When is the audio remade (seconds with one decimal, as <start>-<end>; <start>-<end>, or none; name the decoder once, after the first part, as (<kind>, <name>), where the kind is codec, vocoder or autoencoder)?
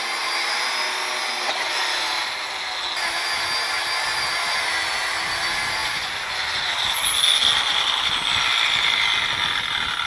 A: 5.8-6.7 (vocoder, Vocos)